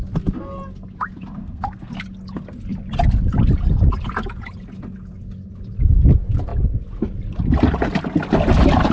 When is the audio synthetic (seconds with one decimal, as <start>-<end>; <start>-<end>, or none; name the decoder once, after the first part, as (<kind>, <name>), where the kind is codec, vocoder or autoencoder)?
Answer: 1.4-1.9 (codec, SNAC)